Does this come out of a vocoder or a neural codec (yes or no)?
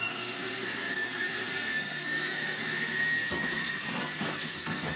yes